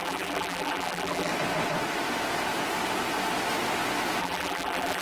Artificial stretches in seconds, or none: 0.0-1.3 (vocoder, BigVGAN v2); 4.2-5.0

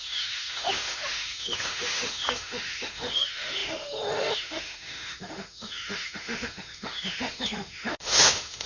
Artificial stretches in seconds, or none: 0.0-8.7 (autoencoder, DAC-VAE)

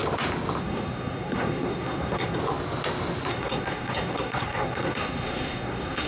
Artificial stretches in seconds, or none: 0.6-2.4 (codec, SNAC); 3.3-6.1

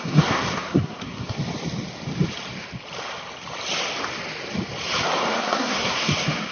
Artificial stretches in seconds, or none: 0.0-1.4 (codec, SNAC); 5.3-6.5

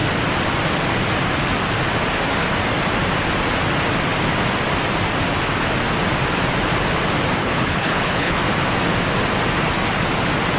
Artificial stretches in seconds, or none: 7.4-8.4 (codec, HILCodec)

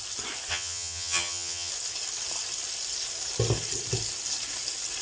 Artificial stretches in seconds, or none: 0.5-1.7 (vocoder, HiFi-GAN)

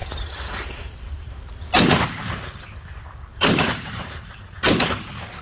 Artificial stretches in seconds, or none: 0.0-1.6 (vocoder, BigVGAN v2); 3.3-4.6

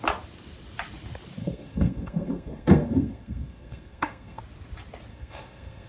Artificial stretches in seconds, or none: 1.4-4.4 (codec, SNAC); 5.1-5.9